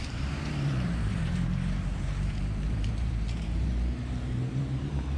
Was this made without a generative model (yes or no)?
no